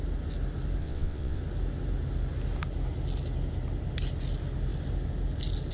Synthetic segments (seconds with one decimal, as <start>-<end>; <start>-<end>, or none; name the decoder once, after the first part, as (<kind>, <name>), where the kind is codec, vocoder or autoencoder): 0.8-1.4 (vocoder, WaveNeXt)